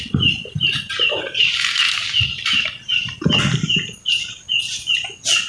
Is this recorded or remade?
recorded